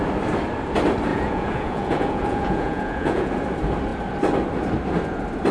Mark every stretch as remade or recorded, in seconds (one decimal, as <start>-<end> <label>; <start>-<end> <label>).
0.0-1.1 recorded; 1.1-3.3 remade; 3.3-5.5 recorded